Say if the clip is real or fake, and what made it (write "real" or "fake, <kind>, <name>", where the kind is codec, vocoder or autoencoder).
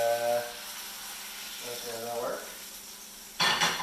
real